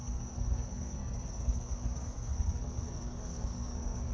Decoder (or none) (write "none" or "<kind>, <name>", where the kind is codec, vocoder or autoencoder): codec, SNAC